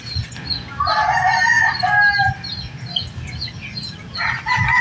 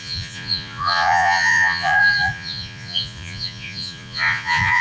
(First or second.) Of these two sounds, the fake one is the second